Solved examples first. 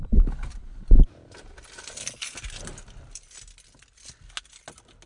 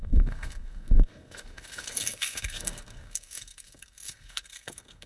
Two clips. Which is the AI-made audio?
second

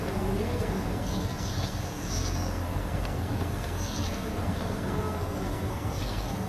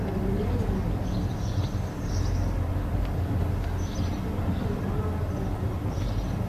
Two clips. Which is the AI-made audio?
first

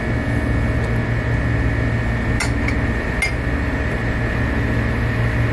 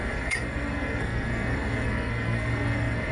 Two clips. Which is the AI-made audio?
second